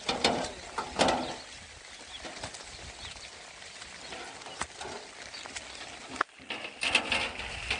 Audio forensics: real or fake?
real